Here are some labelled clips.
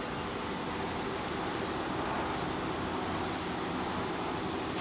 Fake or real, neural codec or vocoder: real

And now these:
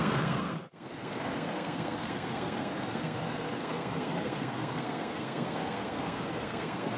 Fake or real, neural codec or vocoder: fake, codec, SNAC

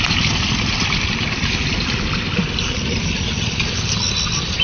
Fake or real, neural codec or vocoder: real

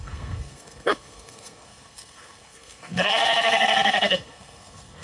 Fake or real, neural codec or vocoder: fake, codec, SNAC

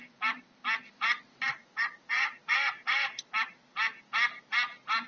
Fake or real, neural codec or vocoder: real